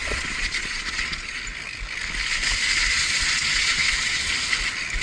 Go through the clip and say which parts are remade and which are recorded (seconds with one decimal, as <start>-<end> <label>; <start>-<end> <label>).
0.0-1.4 remade; 1.4-2.9 recorded; 2.9-4.3 remade; 4.3-5.0 recorded